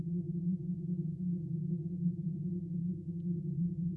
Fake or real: fake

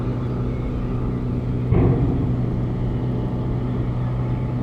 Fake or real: real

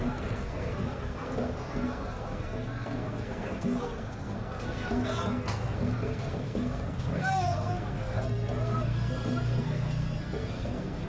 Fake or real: fake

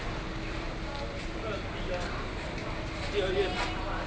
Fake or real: real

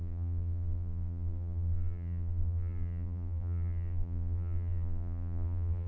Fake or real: fake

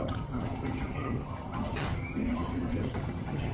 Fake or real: fake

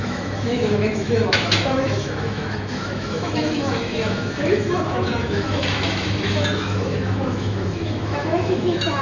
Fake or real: fake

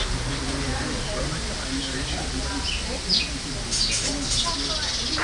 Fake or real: real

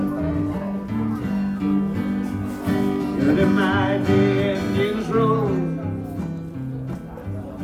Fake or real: real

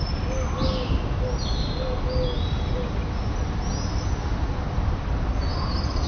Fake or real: real